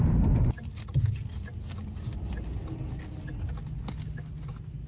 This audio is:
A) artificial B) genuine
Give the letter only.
B